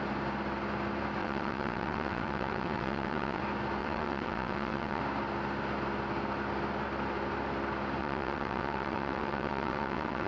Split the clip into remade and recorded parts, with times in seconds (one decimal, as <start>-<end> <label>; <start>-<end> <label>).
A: 0.0-1.2 recorded; 1.2-3.4 remade; 3.4-3.8 recorded; 3.8-5.0 remade; 5.0-8.0 recorded; 8.0-10.3 remade